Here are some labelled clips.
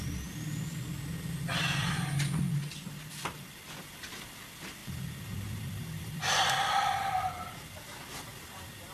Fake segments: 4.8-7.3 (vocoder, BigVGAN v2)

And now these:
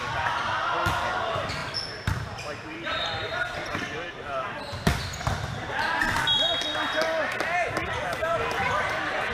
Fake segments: 1.6-6.2 (vocoder, BigVGAN v2)

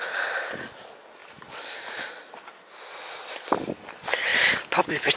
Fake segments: 1.2-2.1 (vocoder, BigVGAN v2)

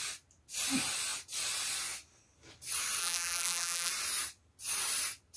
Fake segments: 3.0-3.9 (vocoder, BigVGAN v2)